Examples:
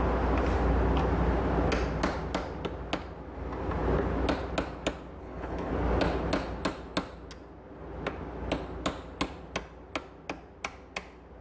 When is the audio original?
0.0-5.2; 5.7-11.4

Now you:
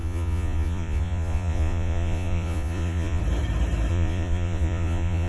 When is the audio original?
3.2-3.9

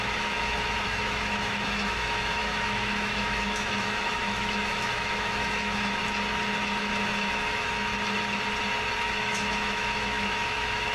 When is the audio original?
6.0-6.6; 7.9-9.0

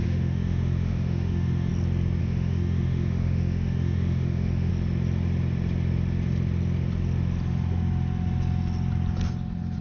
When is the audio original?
1.7-2.2; 4.7-9.8

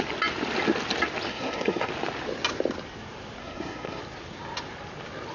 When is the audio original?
0.0-1.3; 1.9-3.4; 4.0-5.3

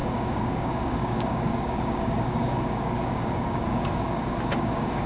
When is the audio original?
none

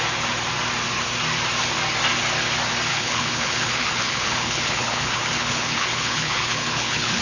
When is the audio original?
0.0-2.9

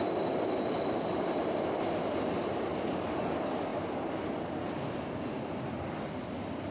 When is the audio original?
none